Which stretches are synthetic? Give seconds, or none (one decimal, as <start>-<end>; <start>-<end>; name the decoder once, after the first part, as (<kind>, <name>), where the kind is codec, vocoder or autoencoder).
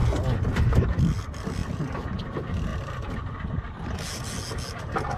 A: none